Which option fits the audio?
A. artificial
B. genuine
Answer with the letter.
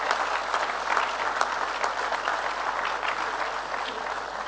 B